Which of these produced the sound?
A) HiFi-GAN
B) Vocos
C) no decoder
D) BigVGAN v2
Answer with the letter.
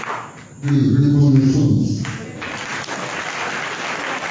C